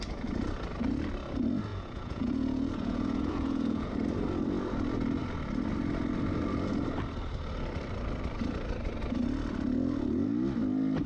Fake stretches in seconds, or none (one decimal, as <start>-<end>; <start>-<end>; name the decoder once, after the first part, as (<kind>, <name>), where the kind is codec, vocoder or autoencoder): 1.7-3.9 (vocoder, Vocos)